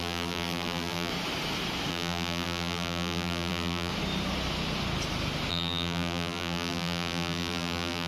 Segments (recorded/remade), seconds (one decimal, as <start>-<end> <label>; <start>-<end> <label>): 0.0-1.1 remade; 1.1-1.9 recorded; 1.9-3.9 remade; 3.9-5.5 recorded; 5.5-8.1 remade